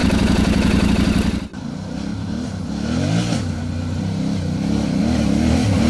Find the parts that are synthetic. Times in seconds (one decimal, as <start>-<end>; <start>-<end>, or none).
0.0-0.9